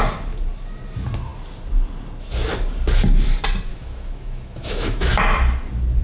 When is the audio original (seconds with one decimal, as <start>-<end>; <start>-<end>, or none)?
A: 0.0-3.7; 5.1-6.0